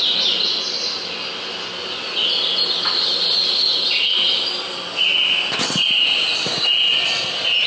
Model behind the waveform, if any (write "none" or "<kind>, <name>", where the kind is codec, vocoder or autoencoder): none